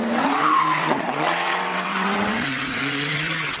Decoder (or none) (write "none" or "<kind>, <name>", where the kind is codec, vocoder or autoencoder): vocoder, WaveNeXt